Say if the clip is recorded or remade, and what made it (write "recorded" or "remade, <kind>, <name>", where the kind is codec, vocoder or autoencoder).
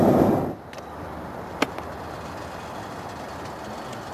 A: recorded